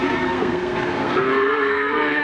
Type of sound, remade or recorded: remade